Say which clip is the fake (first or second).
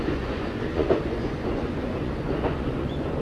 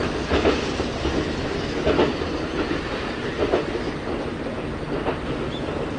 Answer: first